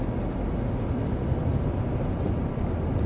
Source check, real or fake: real